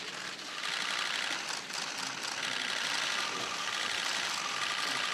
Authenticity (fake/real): real